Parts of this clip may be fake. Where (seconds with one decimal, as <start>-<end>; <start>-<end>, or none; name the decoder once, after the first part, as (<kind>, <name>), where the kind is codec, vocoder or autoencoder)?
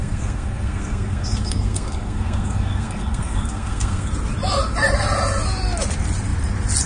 0.0-4.1 (codec, SNAC)